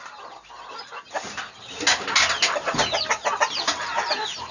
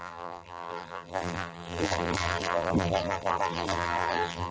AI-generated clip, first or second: second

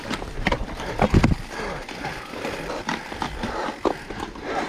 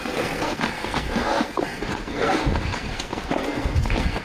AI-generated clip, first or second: second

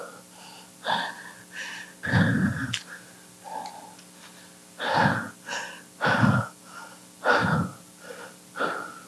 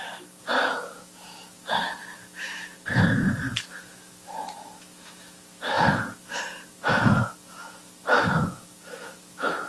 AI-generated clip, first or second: second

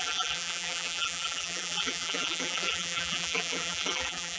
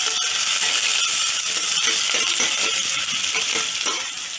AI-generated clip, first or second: first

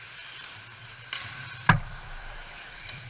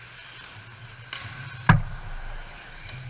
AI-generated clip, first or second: first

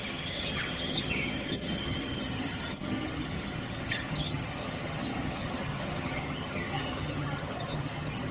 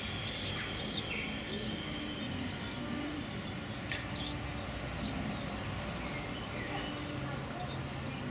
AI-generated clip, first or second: first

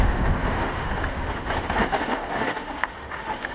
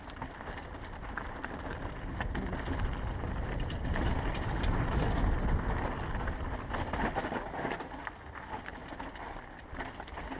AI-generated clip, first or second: first